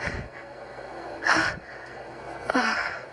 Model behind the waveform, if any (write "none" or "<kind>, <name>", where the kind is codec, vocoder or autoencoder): codec, SNAC